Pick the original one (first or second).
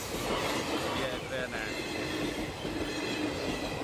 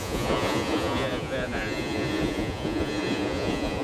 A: first